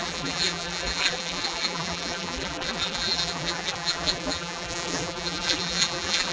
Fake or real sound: fake